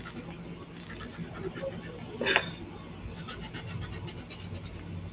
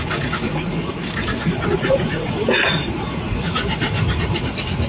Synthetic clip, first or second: second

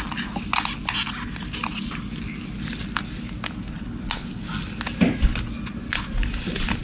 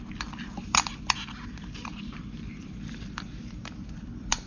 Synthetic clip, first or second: second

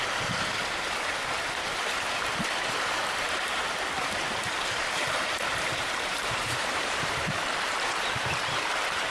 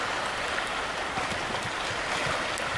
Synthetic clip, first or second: first